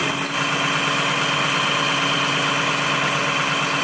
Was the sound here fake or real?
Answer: real